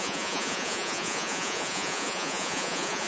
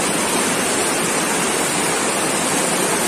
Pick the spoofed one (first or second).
first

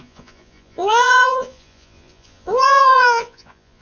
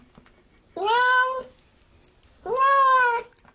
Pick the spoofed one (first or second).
first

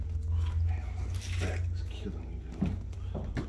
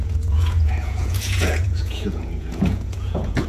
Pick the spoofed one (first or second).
second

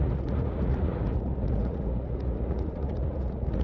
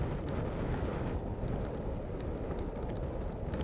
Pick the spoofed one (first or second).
first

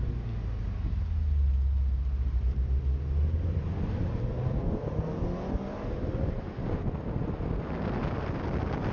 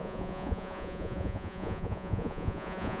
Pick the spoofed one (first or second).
second